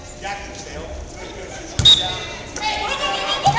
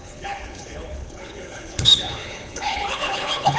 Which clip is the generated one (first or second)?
second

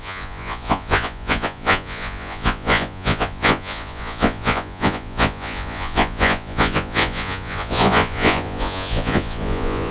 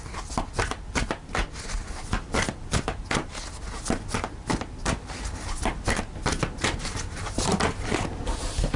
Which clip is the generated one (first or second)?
first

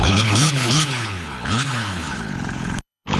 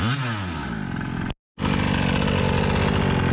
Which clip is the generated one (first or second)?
first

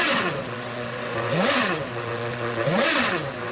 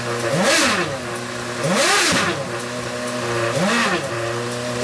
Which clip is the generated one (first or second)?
first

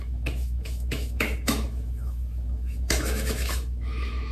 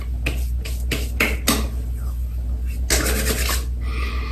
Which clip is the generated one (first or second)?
first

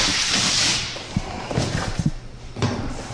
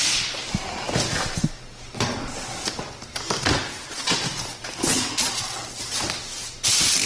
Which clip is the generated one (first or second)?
first